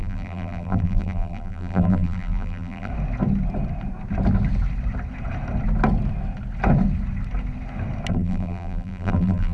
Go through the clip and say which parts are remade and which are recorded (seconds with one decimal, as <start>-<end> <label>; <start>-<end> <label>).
0.0-2.9 remade; 2.9-8.1 recorded; 8.1-9.5 remade